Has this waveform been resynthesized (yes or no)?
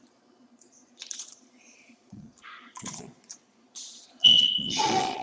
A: yes